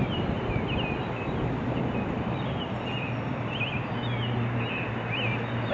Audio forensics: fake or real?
real